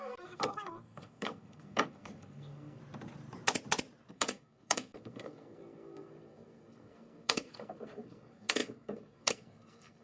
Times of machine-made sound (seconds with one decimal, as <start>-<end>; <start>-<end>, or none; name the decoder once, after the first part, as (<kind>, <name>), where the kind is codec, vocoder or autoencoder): 0.0-2.8 (codec, SNAC); 4.1-10.0